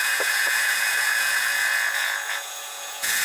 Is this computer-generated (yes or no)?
yes